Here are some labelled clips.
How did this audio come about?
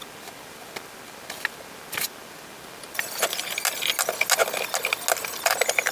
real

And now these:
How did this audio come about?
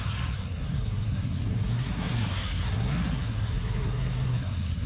fake